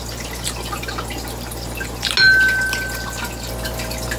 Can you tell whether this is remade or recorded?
recorded